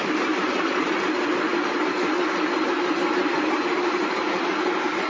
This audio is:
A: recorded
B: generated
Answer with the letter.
B